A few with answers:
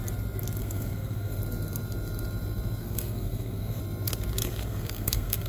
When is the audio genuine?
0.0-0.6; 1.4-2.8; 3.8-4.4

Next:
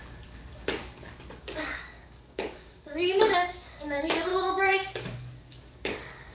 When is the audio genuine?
none

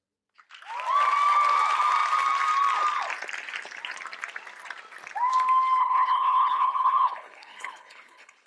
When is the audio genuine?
0.0-5.8